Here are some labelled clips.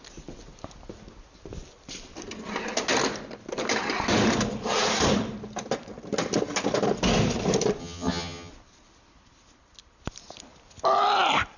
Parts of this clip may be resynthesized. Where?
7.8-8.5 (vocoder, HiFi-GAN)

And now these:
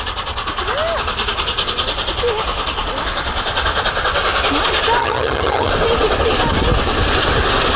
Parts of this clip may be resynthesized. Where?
5.0-5.7 (vocoder, HiFi-GAN)